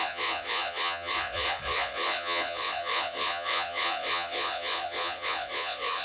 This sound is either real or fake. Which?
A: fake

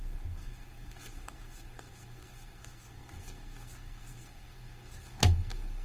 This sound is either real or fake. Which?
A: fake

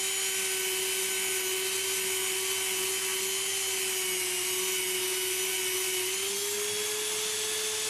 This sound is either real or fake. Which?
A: real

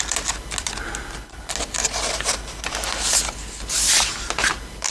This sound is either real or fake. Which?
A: real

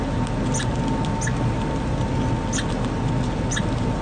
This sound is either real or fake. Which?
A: real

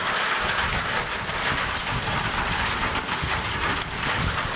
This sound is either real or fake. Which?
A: real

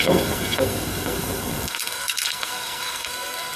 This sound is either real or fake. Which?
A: fake